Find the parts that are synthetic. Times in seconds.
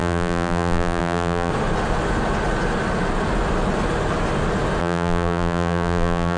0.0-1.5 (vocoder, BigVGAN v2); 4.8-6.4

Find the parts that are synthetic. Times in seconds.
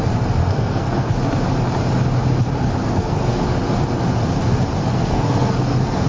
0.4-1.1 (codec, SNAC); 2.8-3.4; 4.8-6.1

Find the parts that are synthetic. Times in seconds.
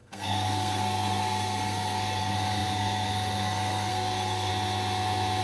0.0-4.5 (codec, SNAC)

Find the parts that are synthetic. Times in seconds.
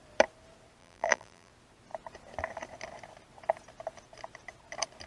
0.8-1.5 (vocoder, BigVGAN v2)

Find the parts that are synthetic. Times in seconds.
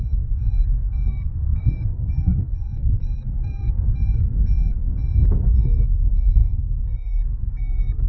0.0-8.1 (codec, SNAC)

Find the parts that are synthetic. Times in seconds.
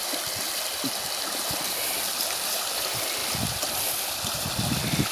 none